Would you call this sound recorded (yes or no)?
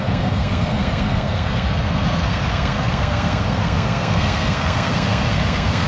no